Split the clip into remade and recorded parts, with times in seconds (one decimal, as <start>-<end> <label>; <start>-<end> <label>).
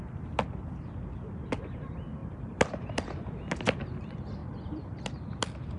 0.0-5.8 recorded